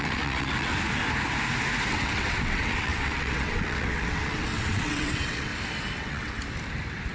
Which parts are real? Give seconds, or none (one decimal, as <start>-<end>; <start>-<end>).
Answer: 0.7-1.9; 5.5-6.0; 6.4-7.1